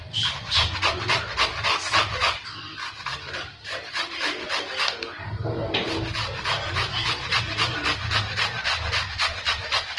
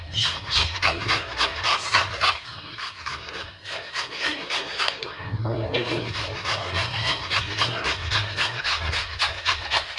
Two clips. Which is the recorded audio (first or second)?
first